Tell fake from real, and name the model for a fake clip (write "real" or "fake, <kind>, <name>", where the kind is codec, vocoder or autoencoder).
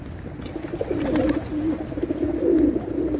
real